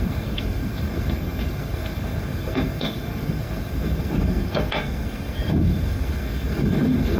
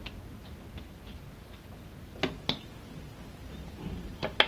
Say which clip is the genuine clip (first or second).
second